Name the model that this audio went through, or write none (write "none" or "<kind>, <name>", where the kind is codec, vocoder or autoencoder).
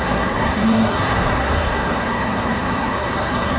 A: codec, SNAC